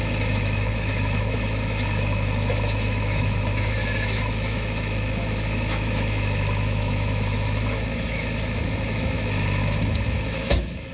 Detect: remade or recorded remade